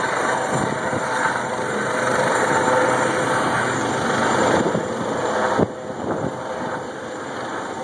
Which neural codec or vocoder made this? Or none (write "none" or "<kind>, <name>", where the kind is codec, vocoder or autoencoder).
none